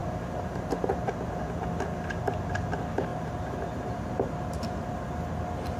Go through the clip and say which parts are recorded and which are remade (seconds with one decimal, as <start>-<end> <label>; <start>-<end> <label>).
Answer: 0.0-0.9 remade; 0.9-3.1 recorded; 3.1-4.7 remade; 4.7-5.8 recorded